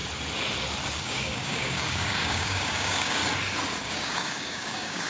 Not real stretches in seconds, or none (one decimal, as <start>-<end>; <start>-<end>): 1.0-3.2; 3.8-5.1